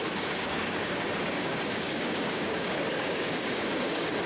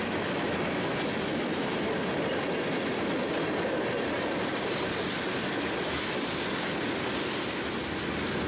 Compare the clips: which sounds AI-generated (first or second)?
first